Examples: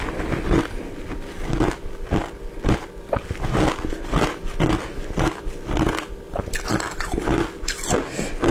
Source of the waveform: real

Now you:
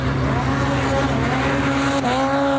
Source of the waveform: real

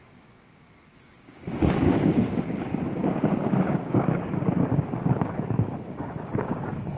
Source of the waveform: fake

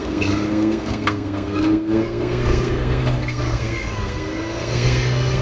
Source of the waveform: fake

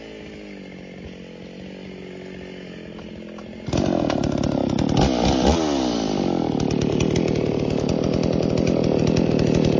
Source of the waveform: real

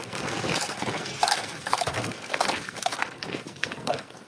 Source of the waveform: fake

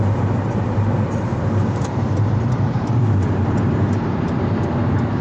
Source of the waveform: fake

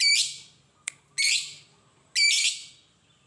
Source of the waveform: real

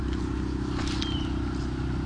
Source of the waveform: real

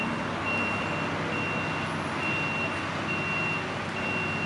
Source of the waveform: real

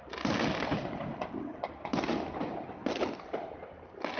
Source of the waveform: real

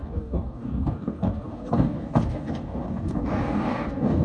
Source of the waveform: fake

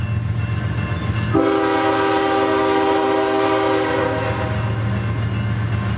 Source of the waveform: real